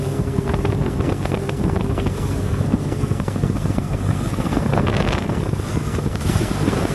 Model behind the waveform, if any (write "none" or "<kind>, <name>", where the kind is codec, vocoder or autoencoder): codec, SNAC